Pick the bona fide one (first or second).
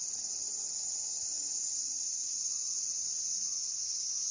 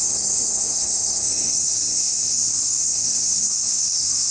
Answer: first